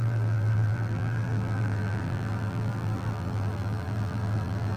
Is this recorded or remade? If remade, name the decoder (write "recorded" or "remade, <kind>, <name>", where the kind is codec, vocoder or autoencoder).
remade, vocoder, BigVGAN v2